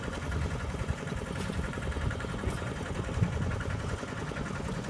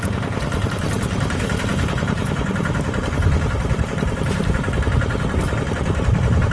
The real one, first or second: second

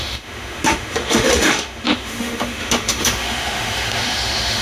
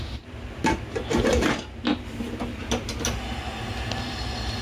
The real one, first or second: second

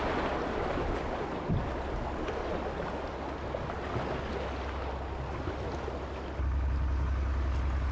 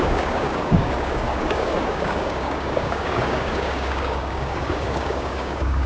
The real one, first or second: first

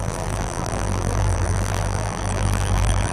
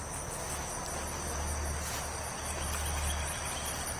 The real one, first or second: second